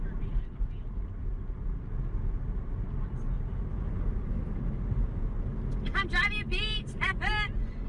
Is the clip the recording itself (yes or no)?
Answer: yes